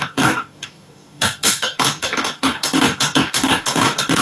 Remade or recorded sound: remade